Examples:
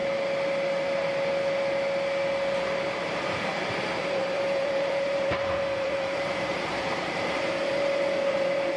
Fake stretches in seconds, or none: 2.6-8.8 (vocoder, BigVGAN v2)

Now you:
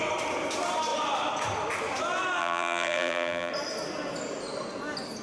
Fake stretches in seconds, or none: 2.4-3.5 (vocoder, BigVGAN v2)

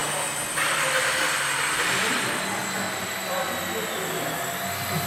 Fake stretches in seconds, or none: none

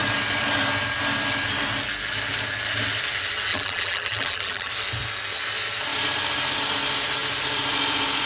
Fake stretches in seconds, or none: 3.5-4.7 (vocoder, BigVGAN v2)

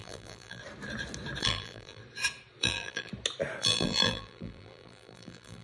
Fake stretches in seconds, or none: 0.0-0.6 (vocoder, BigVGAN v2); 1.4-2.0; 2.6-3.1; 3.6-5.6